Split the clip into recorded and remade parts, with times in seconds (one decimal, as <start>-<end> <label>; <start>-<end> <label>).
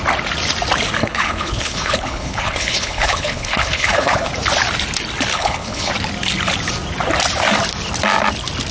0.0-1.0 recorded; 1.0-4.3 remade; 4.3-5.3 recorded; 5.3-5.9 remade; 5.9-8.7 recorded